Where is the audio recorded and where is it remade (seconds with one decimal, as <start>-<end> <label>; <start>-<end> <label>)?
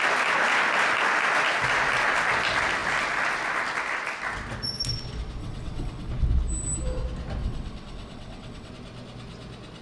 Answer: 0.0-5.4 recorded; 5.4-6.1 remade; 6.1-7.4 recorded; 7.4-8.7 remade; 8.7-9.8 recorded